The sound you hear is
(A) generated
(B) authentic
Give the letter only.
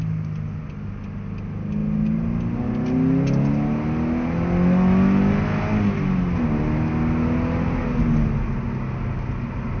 B